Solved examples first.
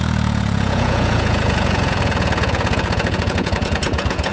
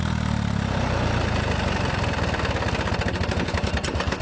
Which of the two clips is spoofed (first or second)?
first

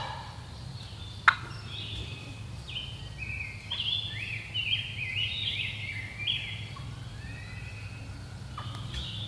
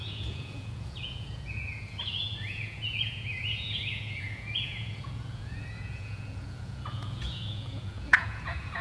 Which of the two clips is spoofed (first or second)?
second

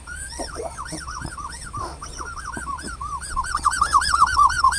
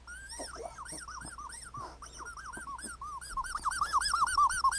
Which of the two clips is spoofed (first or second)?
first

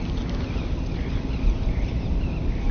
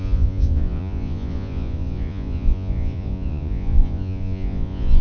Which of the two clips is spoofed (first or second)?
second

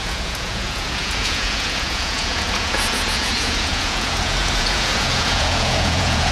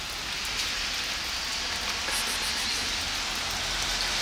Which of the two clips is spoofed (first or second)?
first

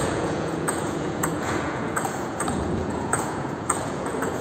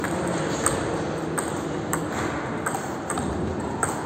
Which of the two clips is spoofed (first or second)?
first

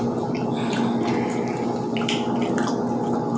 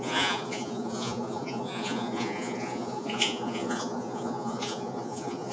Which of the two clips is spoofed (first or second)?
second